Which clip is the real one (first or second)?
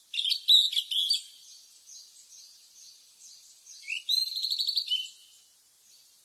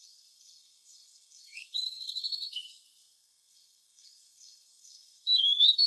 first